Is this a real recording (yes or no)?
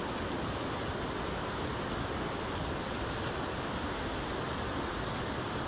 yes